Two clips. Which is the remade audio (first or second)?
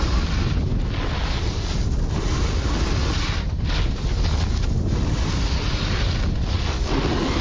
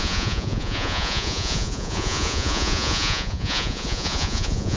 second